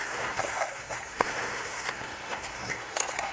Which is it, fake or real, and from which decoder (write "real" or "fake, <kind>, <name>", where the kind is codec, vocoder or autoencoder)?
fake, codec, SNAC